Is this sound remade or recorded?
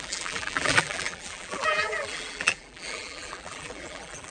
remade